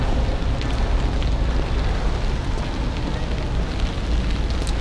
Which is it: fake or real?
real